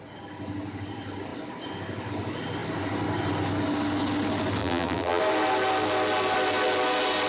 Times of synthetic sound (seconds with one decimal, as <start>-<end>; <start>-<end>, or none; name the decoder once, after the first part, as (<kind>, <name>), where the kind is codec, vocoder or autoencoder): 4.6-5.2 (vocoder, BigVGAN v2)